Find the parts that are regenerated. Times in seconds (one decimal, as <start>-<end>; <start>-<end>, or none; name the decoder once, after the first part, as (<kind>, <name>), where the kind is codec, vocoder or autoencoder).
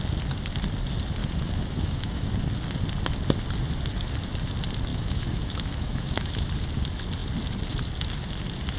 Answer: 1.2-2.3 (autoencoder, DAC-VAE); 4.9-6.5